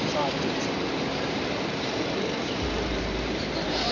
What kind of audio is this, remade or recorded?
remade